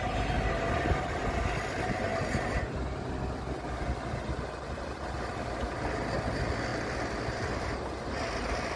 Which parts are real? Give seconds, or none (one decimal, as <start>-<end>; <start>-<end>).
0.0-6.7; 7.8-8.8